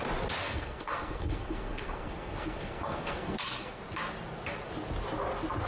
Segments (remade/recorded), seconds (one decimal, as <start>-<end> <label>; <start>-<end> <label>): 0.0-0.4 recorded; 0.4-3.8 remade; 3.8-5.7 recorded